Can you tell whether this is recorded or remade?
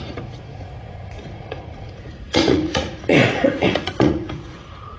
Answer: remade